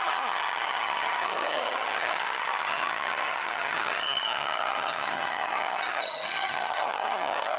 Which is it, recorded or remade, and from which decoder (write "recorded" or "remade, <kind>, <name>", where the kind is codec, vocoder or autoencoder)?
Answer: remade, vocoder, HiFi-GAN